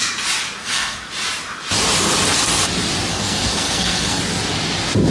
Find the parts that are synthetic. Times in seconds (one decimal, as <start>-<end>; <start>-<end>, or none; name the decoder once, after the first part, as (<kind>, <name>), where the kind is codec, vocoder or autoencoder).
0.6-1.1 (codec, SNAC); 3.1-4.2